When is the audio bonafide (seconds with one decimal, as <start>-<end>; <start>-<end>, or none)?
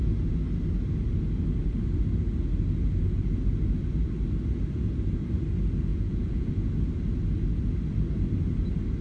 0.0-5.9; 6.7-9.0